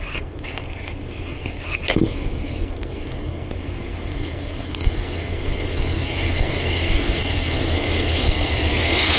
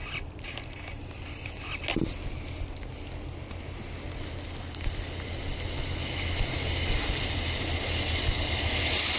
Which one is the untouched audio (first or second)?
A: second